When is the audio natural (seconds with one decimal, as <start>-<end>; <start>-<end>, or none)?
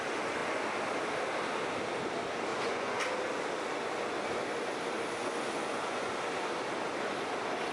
0.0-2.5; 3.0-5.2; 6.1-7.7